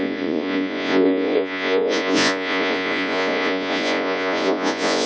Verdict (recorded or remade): remade